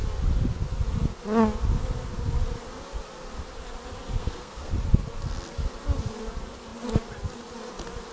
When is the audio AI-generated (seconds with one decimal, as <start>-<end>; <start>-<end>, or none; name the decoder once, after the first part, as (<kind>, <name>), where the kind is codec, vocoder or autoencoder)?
4.2-4.7 (codec, SNAC)